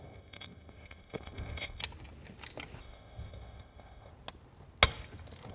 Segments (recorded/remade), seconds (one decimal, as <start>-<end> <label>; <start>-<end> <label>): 0.0-1.8 remade; 1.8-2.8 recorded; 2.8-4.1 remade; 4.1-5.5 recorded